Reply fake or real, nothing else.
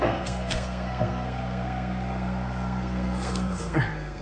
fake